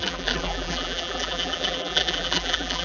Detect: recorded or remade remade